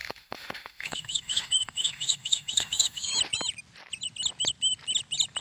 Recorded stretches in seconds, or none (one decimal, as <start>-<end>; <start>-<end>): 3.1-5.4